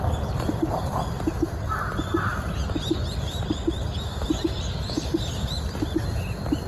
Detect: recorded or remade recorded